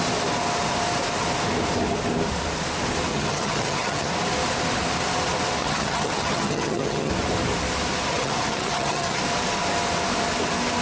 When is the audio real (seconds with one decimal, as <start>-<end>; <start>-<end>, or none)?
0.0-3.1; 4.1-5.6; 7.1-8.1; 9.2-10.8